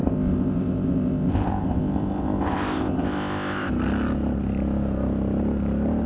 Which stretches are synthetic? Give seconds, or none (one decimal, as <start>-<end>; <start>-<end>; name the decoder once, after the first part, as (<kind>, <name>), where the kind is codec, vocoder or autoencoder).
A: 0.0-3.7 (codec, ZipCodec)